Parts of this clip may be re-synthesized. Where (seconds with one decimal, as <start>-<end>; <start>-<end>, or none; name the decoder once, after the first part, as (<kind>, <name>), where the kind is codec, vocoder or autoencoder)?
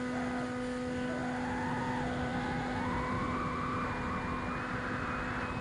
none